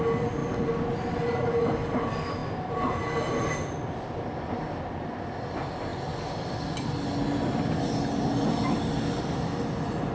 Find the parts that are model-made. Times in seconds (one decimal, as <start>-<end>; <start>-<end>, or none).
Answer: none